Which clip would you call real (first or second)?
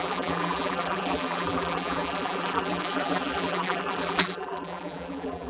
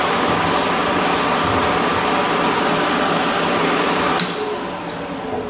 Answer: second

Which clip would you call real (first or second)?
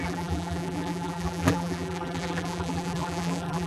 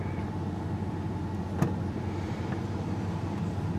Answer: second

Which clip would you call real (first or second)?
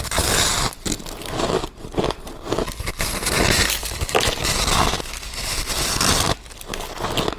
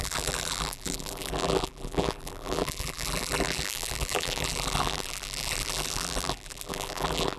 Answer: first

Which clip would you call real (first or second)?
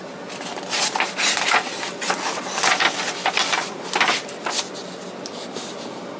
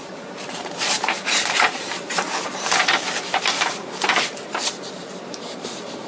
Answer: first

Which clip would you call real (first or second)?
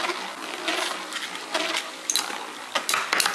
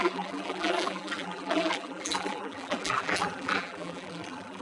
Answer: first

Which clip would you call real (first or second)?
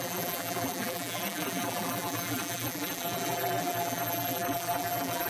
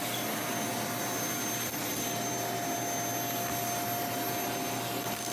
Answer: second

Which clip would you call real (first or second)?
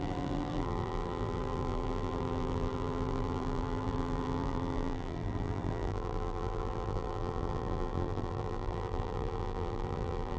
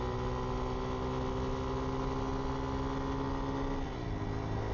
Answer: second